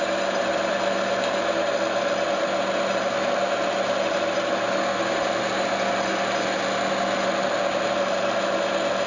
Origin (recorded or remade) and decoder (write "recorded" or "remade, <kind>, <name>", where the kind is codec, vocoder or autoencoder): recorded